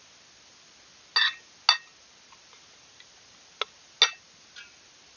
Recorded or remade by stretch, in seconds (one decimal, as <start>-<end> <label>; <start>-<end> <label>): 0.0-5.2 recorded